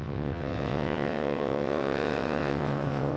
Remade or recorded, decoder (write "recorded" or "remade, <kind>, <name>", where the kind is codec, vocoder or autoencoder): remade, vocoder, WaveNeXt